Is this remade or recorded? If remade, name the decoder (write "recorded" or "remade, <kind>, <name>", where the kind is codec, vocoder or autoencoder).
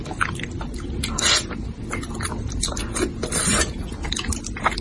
recorded